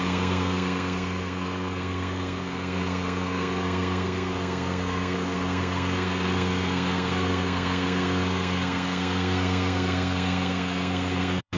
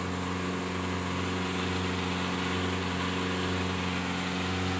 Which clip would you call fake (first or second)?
first